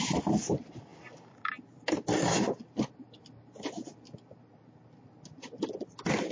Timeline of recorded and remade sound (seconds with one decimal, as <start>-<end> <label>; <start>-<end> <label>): 0.0-6.3 remade